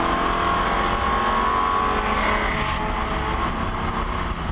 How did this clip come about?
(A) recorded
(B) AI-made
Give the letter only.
A